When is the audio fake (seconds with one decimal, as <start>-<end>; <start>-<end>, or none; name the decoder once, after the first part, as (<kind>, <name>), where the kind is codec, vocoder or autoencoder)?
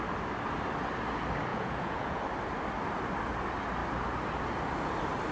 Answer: 1.5-2.2 (vocoder, Vocos)